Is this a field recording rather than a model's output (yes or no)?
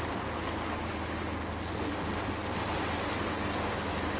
yes